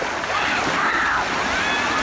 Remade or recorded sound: recorded